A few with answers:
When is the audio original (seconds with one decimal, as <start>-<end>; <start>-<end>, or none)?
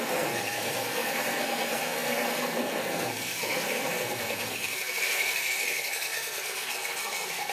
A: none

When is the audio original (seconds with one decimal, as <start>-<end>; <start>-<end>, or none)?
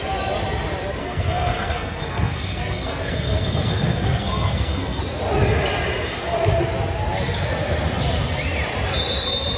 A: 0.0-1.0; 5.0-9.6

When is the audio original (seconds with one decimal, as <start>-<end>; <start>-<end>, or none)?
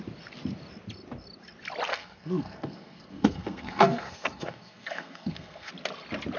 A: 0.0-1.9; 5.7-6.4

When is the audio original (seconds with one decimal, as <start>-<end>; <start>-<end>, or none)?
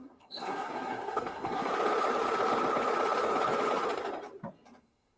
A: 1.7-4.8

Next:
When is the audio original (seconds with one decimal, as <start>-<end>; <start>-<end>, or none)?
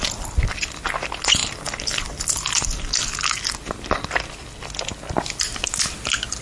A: 0.0-6.4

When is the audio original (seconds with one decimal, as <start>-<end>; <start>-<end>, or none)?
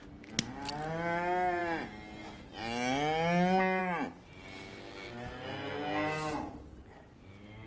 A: 0.0-7.7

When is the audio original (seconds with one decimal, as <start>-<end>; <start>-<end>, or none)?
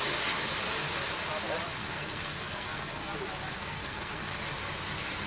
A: 0.0-1.8; 3.1-3.6; 4.4-5.3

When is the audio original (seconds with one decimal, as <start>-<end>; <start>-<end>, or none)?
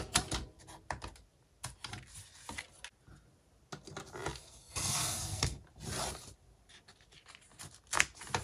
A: 0.0-4.4; 5.6-8.4